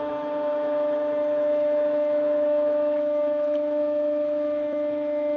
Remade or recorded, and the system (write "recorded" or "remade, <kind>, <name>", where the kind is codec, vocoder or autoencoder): remade, autoencoder, DAC-VAE